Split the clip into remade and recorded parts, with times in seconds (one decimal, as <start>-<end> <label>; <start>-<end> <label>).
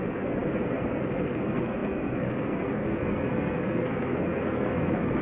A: 0.0-5.2 remade